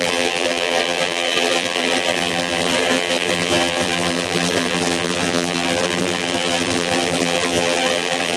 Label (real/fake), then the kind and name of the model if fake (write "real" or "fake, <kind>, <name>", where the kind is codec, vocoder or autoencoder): fake, vocoder, BigVGAN v2